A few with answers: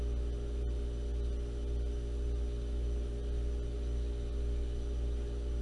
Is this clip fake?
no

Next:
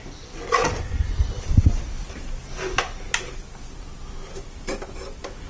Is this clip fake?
no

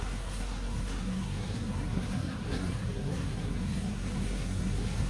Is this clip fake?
yes